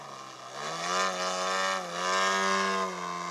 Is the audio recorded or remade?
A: recorded